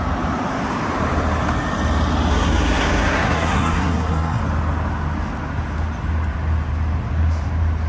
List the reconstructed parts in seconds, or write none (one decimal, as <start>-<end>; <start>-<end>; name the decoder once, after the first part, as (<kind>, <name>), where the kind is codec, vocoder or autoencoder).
2.3-4.4 (codec, SNAC)